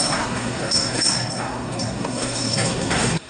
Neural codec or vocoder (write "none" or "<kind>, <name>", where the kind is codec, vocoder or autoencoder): codec, SNAC